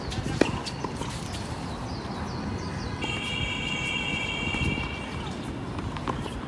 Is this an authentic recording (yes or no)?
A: yes